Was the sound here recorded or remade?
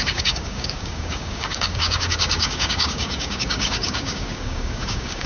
remade